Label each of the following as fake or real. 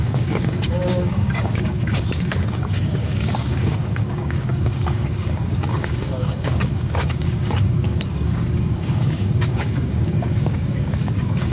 fake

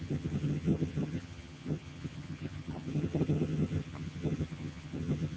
fake